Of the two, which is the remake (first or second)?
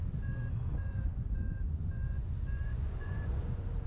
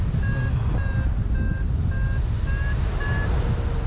first